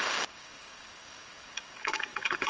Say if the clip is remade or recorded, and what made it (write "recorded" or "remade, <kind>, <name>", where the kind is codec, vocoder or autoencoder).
remade, codec, DAC